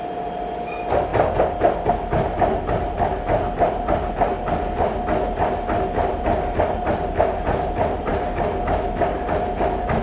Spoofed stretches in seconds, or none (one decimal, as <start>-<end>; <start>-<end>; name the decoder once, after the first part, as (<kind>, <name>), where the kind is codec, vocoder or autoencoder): none